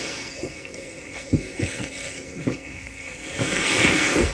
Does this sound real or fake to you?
fake